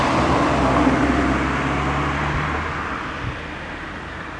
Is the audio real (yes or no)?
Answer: yes